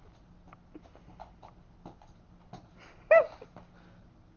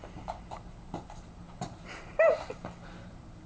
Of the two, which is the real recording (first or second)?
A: first